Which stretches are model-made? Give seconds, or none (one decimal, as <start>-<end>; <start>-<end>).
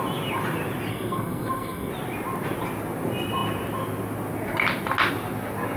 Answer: 0.9-1.9